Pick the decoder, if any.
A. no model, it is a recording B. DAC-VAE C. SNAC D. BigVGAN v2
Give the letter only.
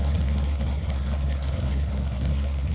C